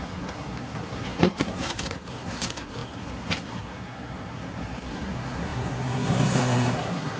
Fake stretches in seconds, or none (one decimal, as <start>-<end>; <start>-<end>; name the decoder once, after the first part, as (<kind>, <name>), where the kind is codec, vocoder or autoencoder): 0.0-7.2 (codec, SNAC)